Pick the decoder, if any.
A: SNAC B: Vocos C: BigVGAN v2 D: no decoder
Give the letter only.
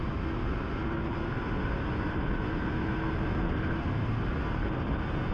D